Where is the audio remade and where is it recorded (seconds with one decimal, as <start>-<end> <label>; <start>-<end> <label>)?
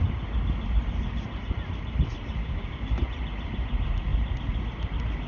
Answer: 0.0-2.4 recorded; 2.4-3.0 remade; 3.0-5.3 recorded